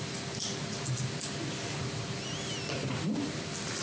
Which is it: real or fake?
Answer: real